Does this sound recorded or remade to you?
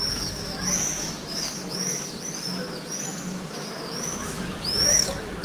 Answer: remade